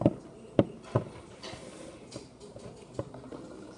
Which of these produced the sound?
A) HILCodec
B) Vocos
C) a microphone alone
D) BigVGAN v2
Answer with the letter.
C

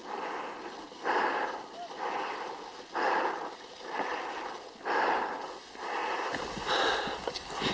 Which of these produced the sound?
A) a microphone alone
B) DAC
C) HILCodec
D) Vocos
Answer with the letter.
A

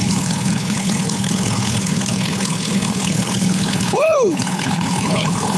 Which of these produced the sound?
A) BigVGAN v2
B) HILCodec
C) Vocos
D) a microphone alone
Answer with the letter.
B